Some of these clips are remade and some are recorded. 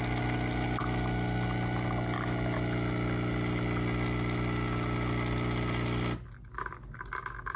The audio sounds recorded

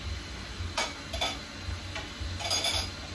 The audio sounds recorded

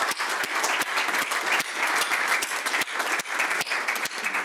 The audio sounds recorded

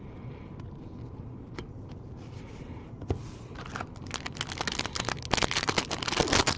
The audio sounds recorded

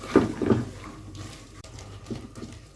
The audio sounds remade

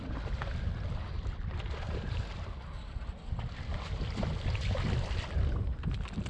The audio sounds recorded